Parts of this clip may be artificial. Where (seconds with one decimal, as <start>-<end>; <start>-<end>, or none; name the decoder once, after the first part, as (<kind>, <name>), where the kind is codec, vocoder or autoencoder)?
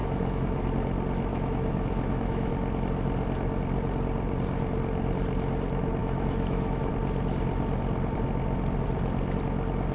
0.0-0.7 (autoencoder, DAC-VAE); 1.3-2.5; 6.0-6.9